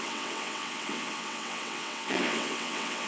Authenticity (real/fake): fake